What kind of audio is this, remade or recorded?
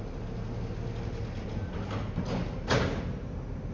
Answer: recorded